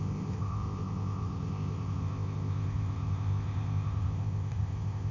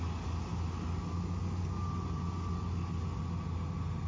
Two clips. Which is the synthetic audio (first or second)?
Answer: first